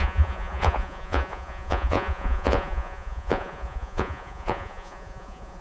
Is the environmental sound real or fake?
fake